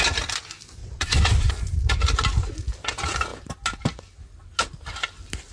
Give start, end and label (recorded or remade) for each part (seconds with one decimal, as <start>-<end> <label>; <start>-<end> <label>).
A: 0.0-0.8 recorded; 0.8-1.5 remade; 1.5-5.5 recorded